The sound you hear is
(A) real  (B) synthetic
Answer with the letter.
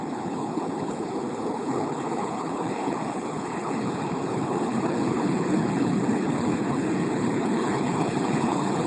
B